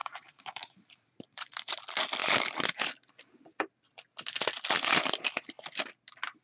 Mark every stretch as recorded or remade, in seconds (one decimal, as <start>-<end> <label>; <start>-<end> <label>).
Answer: 0.0-1.7 remade; 1.7-6.4 recorded